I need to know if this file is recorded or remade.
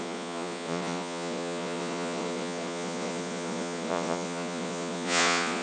remade